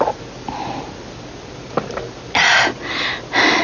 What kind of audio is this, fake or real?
real